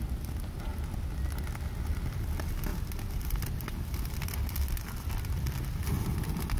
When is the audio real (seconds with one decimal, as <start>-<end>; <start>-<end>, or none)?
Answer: 0.0-6.6